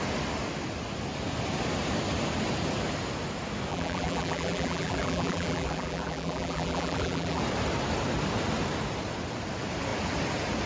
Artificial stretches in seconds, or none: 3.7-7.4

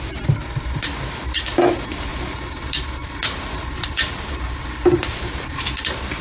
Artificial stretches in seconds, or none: 2.1-5.8

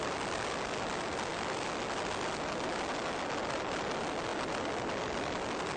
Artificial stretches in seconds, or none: none

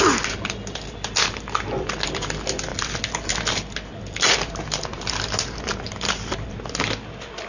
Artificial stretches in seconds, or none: none

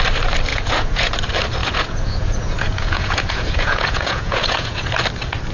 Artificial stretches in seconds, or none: 0.5-1.1; 1.6-4.9